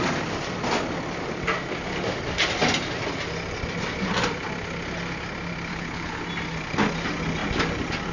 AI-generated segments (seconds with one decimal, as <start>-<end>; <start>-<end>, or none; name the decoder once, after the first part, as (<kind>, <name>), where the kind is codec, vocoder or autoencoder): 5.7-6.2 (codec, HILCodec)